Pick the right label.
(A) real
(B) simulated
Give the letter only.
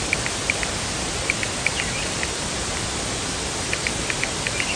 A